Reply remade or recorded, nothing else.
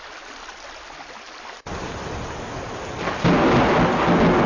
recorded